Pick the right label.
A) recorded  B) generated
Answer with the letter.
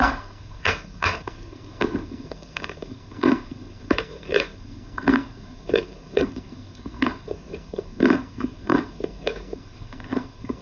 B